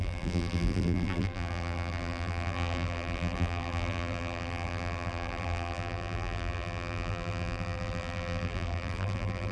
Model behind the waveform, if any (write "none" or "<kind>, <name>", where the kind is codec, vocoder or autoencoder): vocoder, BigVGAN v2